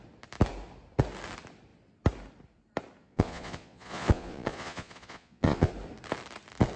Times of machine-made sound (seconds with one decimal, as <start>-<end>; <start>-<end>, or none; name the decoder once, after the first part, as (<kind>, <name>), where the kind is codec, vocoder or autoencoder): 3.0-5.7 (vocoder, Vocos)